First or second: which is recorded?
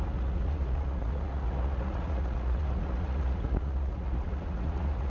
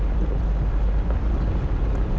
second